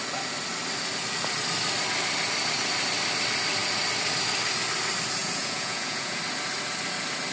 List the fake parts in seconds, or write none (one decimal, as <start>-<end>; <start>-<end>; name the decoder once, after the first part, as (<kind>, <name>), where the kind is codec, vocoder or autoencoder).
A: 5.2-6.2 (vocoder, Vocos)